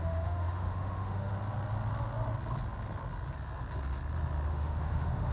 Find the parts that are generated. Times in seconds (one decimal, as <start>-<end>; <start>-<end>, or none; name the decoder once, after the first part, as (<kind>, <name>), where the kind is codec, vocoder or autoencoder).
0.0-1.3 (autoencoder, DAC-VAE); 4.5-5.3